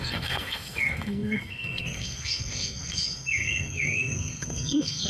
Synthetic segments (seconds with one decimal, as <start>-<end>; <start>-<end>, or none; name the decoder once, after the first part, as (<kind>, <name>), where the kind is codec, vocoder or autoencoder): 0.0-5.1 (codec, SNAC)